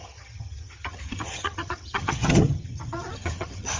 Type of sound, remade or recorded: remade